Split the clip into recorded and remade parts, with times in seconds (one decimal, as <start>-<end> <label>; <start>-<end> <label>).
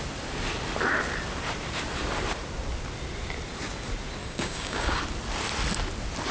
0.0-4.2 recorded; 4.2-5.0 remade; 5.0-6.3 recorded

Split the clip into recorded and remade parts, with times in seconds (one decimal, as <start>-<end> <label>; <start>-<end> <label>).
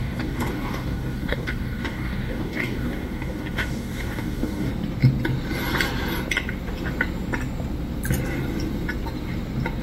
0.0-4.7 remade; 4.7-9.8 recorded